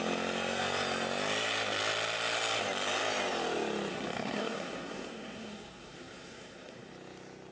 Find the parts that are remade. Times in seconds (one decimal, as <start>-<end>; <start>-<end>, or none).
3.9-6.9